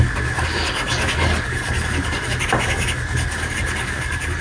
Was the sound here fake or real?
fake